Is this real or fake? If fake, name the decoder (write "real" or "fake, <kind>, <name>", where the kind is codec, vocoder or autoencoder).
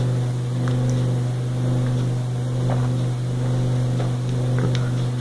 real